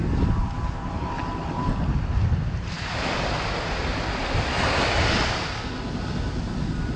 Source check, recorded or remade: recorded